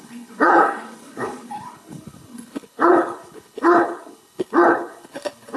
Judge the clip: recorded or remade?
remade